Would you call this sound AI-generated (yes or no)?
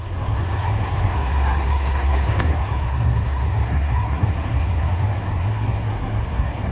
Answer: yes